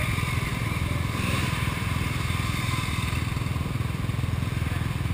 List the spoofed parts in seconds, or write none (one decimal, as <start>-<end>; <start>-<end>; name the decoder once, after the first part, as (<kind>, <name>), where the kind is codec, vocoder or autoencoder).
0.5-3.1 (vocoder, BigVGAN v2)